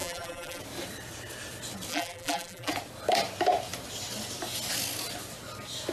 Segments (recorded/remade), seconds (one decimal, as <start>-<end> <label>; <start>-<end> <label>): 0.0-0.6 remade; 0.6-1.9 recorded; 1.9-2.7 remade; 2.7-5.9 recorded